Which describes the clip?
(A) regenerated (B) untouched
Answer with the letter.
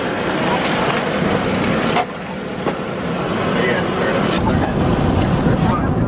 B